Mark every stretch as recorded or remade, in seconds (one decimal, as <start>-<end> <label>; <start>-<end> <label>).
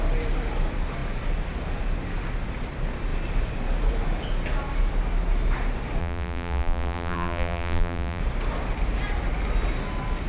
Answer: 0.0-6.0 recorded; 6.0-8.2 remade; 8.2-10.3 recorded